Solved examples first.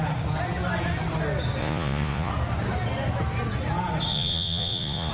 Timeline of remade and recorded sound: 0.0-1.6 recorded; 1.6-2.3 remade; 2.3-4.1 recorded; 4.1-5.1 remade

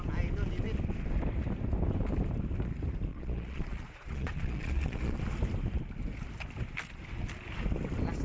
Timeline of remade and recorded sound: 0.0-3.1 recorded; 3.1-5.2 remade; 5.2-8.2 recorded